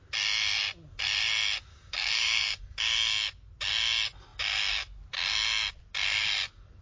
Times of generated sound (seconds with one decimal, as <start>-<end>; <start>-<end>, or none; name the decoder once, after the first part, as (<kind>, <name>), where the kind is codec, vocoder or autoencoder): 1.7-2.6 (codec, DAC)